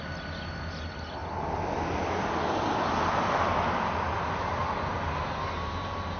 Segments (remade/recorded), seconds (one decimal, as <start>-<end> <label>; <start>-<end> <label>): 0.0-6.2 recorded